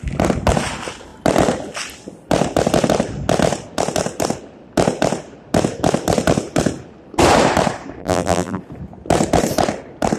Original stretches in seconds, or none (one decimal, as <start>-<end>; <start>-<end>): 0.0-8.0; 8.6-10.2